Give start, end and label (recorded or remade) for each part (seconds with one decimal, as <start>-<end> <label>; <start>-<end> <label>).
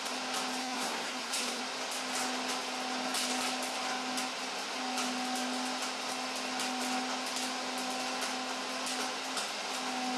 0.0-0.6 recorded; 0.6-1.6 remade; 1.6-10.2 recorded